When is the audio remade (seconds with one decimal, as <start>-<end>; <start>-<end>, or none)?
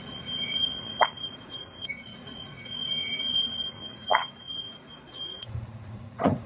0.0-6.5